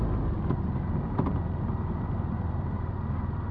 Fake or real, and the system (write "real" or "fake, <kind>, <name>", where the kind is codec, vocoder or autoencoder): real